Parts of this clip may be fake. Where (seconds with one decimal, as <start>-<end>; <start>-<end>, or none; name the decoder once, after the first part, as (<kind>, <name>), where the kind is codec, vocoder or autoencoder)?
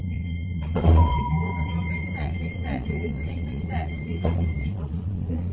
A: 0.0-5.5 (vocoder, Vocos)